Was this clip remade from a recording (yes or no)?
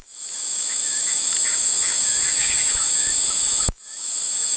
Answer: yes